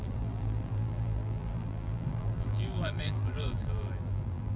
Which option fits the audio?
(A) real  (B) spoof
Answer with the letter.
B